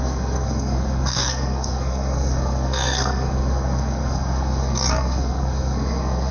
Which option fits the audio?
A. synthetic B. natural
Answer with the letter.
A